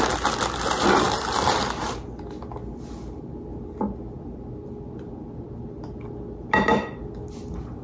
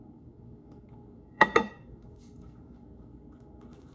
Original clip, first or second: first